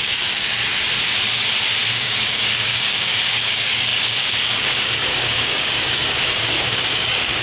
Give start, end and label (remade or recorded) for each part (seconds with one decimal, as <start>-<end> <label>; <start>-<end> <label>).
0.0-0.6 remade; 0.6-1.9 recorded; 1.9-7.4 remade